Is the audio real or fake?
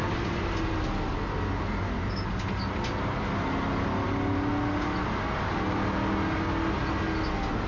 real